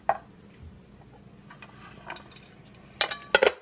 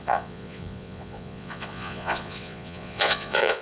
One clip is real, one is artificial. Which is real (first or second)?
first